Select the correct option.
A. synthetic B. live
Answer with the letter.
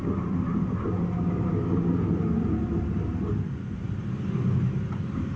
B